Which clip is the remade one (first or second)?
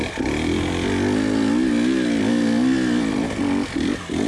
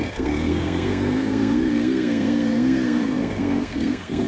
second